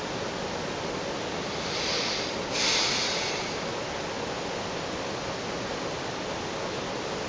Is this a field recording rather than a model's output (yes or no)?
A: yes